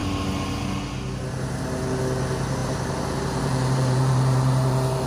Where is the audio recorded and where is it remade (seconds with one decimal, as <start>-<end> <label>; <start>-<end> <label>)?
0.0-2.6 recorded; 2.6-5.1 remade